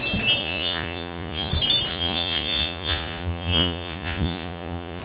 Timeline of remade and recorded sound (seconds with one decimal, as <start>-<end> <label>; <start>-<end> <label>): 0.0-0.4 recorded; 0.4-1.5 remade; 1.5-1.9 recorded; 1.9-5.0 remade